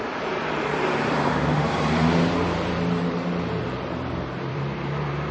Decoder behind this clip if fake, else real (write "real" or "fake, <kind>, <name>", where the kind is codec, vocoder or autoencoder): fake, vocoder, BigVGAN v2